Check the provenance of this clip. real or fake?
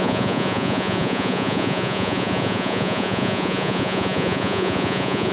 fake